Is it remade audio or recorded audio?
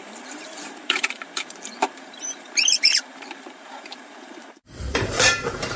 remade